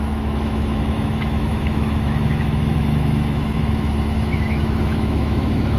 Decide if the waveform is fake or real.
fake